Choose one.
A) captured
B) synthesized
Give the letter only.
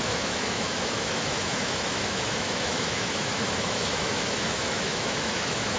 B